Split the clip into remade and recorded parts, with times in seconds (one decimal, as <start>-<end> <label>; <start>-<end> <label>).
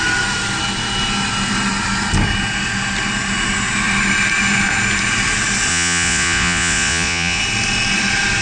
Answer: 0.0-5.7 recorded; 5.7-7.4 remade; 7.4-8.4 recorded